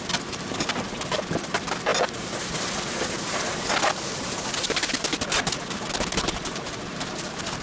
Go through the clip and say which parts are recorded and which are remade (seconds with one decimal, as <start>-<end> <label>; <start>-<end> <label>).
0.0-7.6 recorded